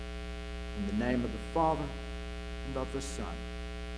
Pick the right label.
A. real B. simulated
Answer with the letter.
A